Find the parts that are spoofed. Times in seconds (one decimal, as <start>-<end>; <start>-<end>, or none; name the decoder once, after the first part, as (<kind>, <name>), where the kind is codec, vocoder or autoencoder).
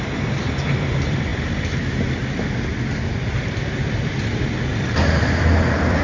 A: 0.0-1.3 (vocoder, BigVGAN v2); 2.7-6.0